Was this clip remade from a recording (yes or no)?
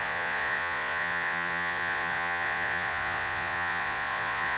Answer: yes